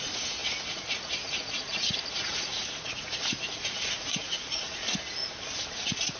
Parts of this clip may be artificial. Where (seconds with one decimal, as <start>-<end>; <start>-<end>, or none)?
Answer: 0.0-5.2; 5.7-6.2

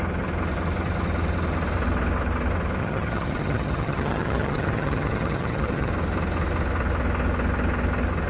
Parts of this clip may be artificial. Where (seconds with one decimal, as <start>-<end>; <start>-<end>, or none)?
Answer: 2.8-5.9

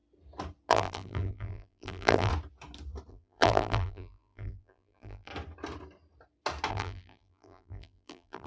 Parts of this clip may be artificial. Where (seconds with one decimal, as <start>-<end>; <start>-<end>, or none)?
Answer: 0.7-2.3; 3.1-5.3; 6.7-8.5